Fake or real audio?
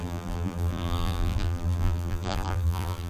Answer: fake